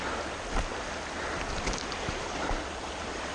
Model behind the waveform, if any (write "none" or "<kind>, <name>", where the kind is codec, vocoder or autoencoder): none